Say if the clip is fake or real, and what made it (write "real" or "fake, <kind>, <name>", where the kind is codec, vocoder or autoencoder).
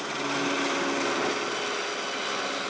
real